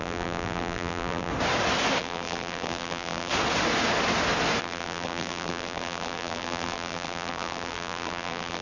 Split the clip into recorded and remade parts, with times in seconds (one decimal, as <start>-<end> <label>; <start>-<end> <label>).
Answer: 0.0-1.3 remade; 1.3-2.0 recorded; 2.0-3.3 remade; 3.3-4.6 recorded; 4.6-8.6 remade